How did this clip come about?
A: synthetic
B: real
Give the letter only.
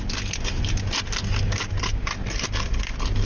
B